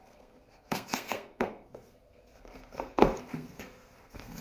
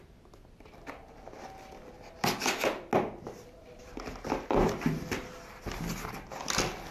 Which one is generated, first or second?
first